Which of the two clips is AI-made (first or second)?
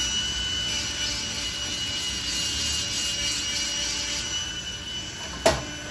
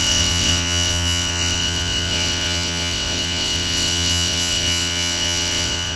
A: second